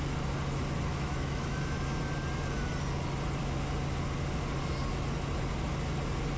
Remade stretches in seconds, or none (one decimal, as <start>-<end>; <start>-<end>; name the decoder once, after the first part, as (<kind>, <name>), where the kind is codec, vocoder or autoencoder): 0.9-1.8 (autoencoder, DAC-VAE)